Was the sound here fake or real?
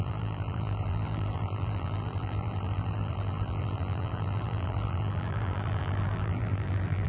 fake